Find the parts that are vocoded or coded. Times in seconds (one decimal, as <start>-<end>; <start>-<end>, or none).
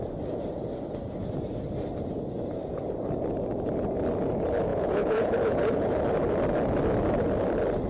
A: 4.7-6.0